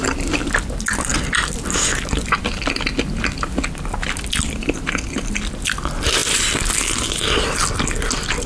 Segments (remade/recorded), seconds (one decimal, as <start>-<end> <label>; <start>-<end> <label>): 0.0-8.5 recorded